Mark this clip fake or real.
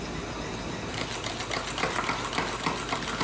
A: real